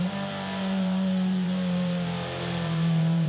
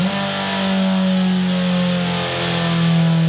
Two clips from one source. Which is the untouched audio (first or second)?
second